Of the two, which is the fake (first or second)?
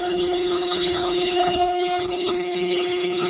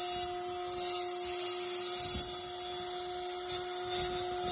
first